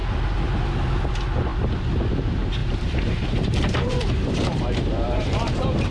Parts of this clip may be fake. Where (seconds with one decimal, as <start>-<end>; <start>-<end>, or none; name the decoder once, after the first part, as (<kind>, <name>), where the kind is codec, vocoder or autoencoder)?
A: 2.6-5.9 (vocoder, BigVGAN v2)